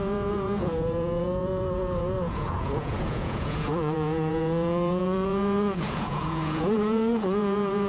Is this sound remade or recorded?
remade